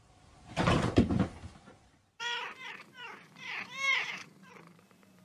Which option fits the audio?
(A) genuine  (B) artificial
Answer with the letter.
B